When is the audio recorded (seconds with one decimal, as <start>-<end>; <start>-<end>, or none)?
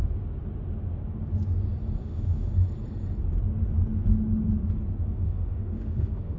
0.0-2.0; 2.5-5.0